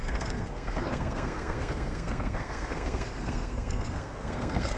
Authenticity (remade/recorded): remade